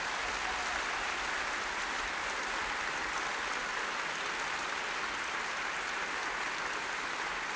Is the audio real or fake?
real